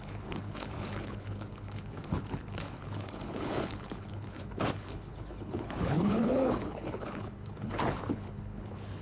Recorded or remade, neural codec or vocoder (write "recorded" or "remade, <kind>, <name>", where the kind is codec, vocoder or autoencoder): remade, codec, HILCodec